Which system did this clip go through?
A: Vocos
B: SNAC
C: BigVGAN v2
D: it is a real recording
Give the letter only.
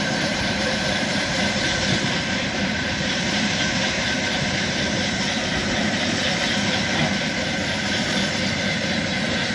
C